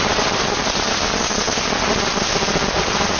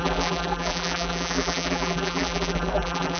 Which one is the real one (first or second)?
first